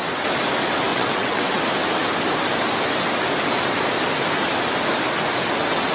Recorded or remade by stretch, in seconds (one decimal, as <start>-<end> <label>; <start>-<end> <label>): 0.0-0.9 recorded; 0.9-1.6 remade; 1.6-5.9 recorded